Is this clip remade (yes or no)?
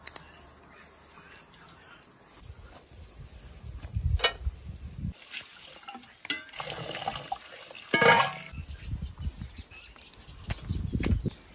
no